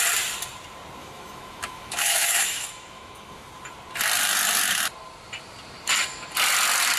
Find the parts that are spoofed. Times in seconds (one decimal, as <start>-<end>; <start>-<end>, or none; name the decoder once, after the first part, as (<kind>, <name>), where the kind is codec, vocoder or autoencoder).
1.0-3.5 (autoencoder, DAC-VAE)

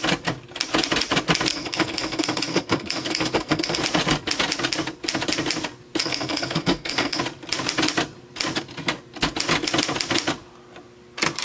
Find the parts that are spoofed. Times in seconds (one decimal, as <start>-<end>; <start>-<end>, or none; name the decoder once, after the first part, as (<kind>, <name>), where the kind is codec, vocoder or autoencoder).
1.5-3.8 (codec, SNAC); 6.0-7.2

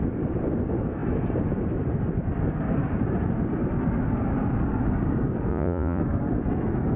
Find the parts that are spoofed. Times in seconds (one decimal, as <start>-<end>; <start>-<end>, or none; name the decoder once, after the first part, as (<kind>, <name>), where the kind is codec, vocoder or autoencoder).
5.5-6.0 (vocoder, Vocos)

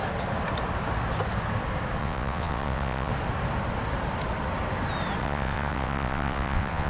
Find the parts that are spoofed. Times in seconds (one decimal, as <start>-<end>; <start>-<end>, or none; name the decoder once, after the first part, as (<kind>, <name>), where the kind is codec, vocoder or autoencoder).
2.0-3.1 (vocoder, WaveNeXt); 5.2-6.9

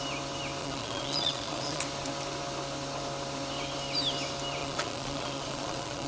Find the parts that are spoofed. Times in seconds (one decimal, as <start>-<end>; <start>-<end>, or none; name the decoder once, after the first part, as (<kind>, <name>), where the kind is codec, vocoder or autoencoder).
0.6-1.8 (vocoder, Vocos); 4.6-6.1

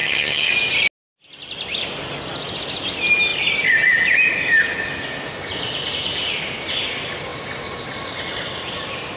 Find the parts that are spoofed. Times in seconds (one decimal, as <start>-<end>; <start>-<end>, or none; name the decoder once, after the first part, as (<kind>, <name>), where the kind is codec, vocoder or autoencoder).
0.0-0.5 (vocoder, HiFi-GAN)